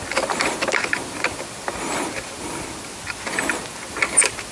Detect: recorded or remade recorded